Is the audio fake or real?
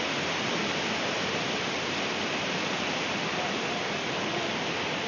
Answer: real